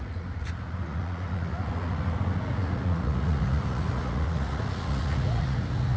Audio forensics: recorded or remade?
remade